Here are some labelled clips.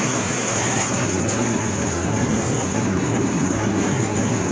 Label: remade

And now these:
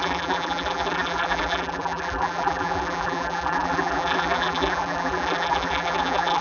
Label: remade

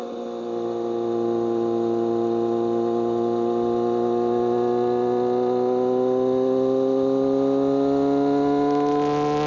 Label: recorded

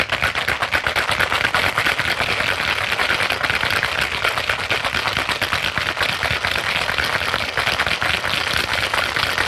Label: recorded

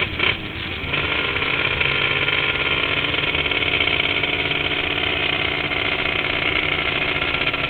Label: recorded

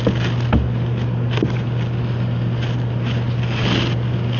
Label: recorded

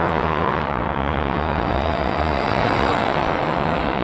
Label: remade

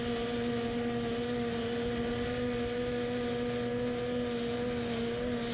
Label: recorded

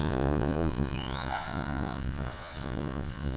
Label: remade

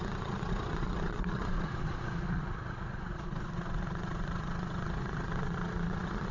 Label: remade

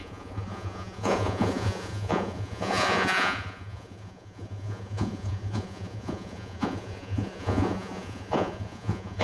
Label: remade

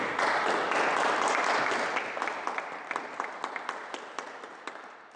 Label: recorded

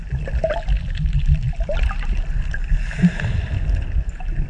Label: recorded